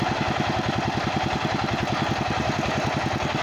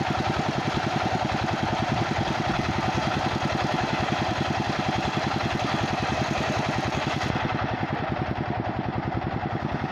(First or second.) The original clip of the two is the first